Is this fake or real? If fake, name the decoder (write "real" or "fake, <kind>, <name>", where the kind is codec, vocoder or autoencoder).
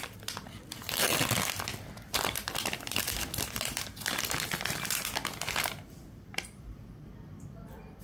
fake, vocoder, BigVGAN v2